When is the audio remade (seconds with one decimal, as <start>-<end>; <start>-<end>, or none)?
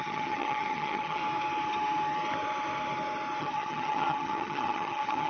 0.0-1.2; 3.4-5.3